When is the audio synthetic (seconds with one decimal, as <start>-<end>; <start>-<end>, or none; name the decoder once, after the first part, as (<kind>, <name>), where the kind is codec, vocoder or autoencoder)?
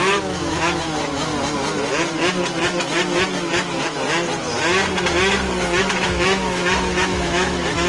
0.0-1.3 (autoencoder, DAC-VAE); 5.8-7.9